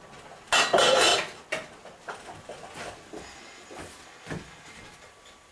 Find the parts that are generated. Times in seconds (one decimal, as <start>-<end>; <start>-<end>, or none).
none